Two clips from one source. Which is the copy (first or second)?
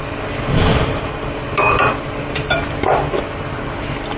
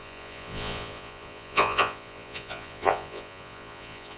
second